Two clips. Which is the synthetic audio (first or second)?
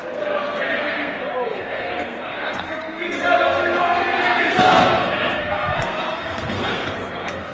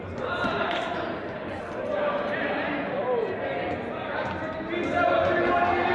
first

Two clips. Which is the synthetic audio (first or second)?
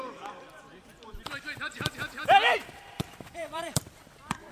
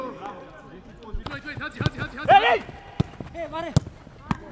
first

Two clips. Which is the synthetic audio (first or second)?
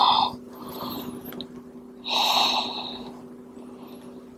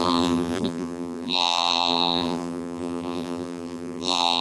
second